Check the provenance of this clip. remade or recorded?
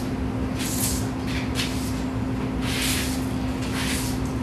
recorded